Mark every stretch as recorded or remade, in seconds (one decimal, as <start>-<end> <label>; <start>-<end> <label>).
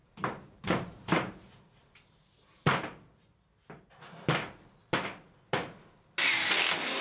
0.0-1.4 remade; 1.4-7.0 recorded